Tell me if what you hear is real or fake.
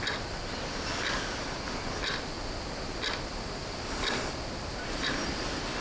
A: real